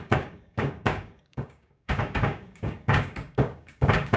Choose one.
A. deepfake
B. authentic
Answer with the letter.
A